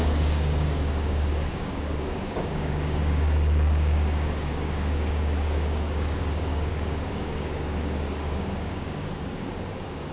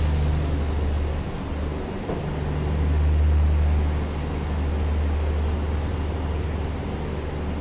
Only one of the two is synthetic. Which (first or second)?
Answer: first